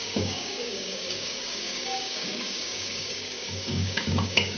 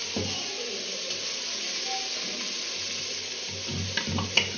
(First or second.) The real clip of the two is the second